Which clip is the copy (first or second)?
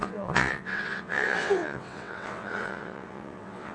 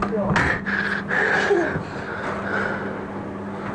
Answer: first